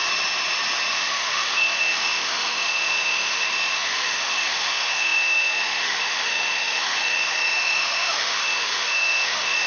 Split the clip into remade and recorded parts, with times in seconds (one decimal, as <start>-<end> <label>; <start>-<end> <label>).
0.0-0.9 recorded; 0.9-9.7 remade